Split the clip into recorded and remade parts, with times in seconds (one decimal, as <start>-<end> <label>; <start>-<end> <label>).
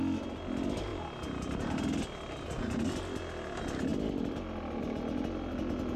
0.0-6.0 recorded